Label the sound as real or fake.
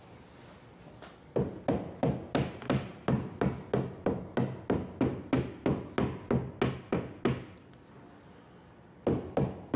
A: real